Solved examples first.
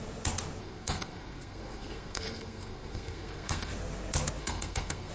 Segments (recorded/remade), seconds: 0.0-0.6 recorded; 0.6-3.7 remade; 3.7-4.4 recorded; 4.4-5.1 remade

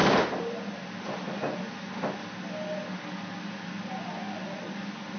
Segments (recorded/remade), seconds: 0.0-5.2 recorded

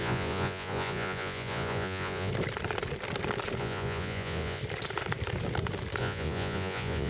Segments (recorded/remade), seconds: 0.0-2.3 remade; 2.3-3.6 recorded; 3.6-4.6 remade; 4.6-6.0 recorded; 6.0-7.1 remade

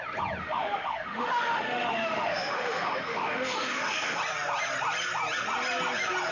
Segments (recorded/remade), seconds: 0.0-0.4 recorded; 0.4-4.2 remade; 4.2-6.3 recorded

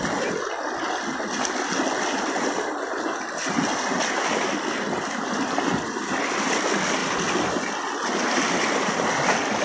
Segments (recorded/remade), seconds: 0.0-9.6 recorded

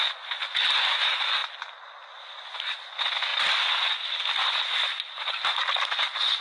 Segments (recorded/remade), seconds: 0.0-3.3 recorded; 3.3-5.2 remade; 5.2-6.4 recorded